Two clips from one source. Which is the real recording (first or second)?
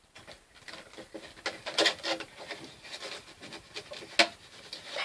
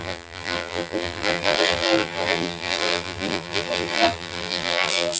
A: first